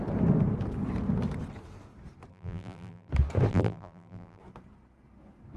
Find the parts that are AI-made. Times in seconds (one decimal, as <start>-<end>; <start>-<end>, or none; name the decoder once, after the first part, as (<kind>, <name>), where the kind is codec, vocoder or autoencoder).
2.3-3.1 (vocoder, BigVGAN v2); 3.5-4.4